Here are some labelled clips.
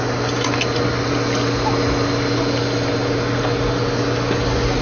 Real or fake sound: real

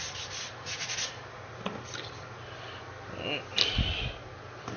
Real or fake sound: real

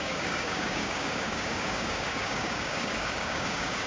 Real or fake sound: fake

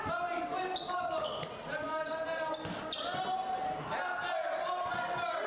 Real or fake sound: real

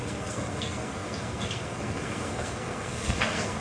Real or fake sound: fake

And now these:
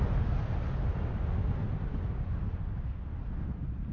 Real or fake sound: real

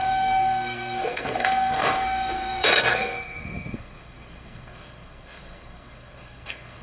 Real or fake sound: fake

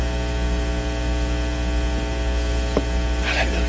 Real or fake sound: real